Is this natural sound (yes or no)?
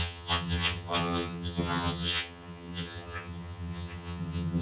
no